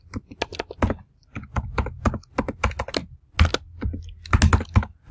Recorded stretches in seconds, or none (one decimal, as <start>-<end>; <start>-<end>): 0.0-5.1